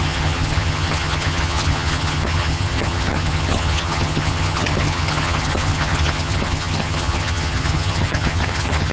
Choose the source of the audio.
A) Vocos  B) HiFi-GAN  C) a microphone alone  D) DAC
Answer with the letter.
B